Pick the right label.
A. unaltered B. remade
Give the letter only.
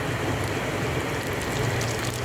A